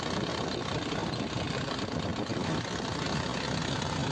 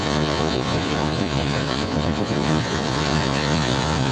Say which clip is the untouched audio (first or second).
first